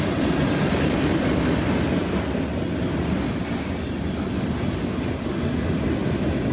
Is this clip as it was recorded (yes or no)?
yes